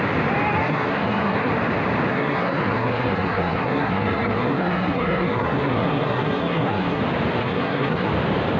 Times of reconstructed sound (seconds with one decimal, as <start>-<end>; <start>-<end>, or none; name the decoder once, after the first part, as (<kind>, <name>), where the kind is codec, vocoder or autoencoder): 0.6-1.5 (codec, SNAC); 2.1-7.0; 7.4-8.1